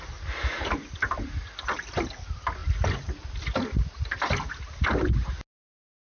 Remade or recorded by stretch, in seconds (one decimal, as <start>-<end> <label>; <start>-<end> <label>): 0.0-6.0 recorded